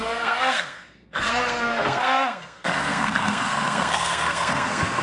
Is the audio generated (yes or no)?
yes